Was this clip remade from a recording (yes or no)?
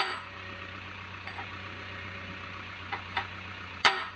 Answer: yes